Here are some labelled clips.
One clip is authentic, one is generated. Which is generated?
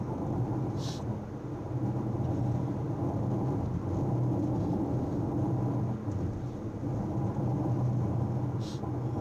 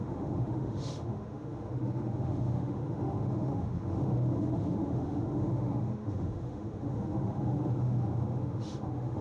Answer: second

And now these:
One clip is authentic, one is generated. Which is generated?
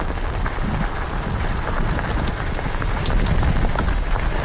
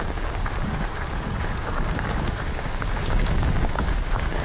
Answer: second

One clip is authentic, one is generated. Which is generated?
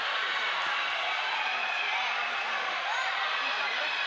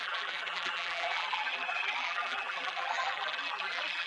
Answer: second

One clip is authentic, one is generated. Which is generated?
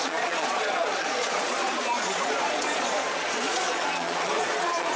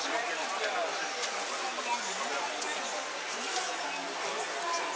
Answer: first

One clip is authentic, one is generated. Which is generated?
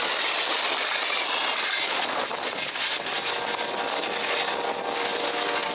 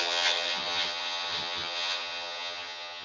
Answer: second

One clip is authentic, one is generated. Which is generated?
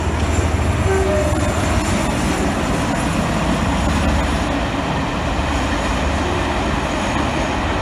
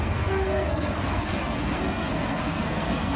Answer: second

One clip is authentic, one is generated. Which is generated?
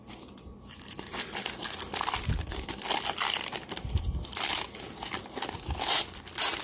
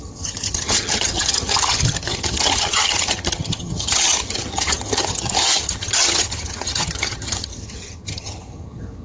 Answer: second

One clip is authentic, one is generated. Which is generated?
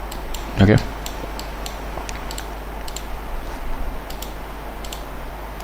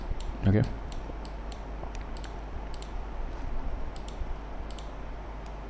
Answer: second